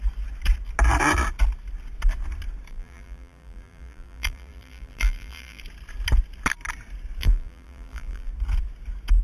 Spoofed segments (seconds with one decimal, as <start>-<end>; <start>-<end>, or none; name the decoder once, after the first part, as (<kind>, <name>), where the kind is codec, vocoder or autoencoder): 2.7-5.6 (vocoder, BigVGAN v2); 7.2-8.3